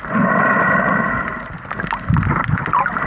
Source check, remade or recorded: remade